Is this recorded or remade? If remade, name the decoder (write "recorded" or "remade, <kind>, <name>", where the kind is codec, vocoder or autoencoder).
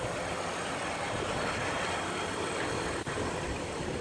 recorded